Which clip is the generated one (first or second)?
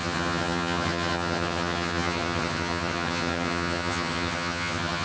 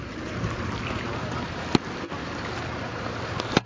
first